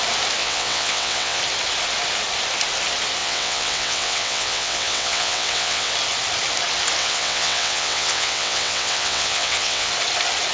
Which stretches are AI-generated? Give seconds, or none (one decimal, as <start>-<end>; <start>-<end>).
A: 0.4-1.4; 3.2-5.9; 7.0-9.9